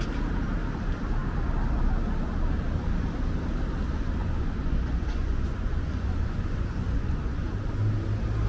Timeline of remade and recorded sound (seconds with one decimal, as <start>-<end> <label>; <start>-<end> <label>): 0.0-4.2 recorded; 4.2-7.5 remade; 7.5-8.5 recorded